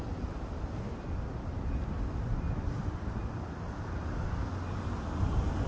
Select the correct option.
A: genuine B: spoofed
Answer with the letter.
A